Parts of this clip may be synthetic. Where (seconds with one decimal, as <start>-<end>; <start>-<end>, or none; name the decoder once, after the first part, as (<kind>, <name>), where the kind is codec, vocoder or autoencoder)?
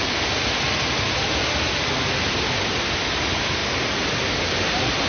none